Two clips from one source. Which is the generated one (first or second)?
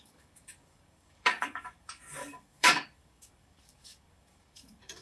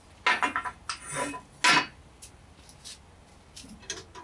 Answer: first